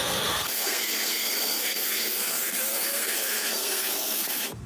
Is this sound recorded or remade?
remade